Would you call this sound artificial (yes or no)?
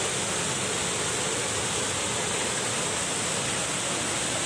no